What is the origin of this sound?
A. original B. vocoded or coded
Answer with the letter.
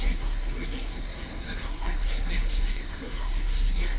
B